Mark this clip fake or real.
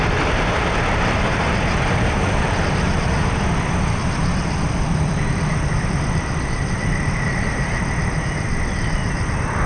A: fake